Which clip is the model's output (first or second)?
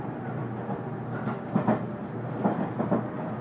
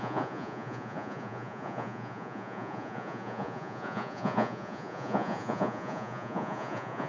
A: second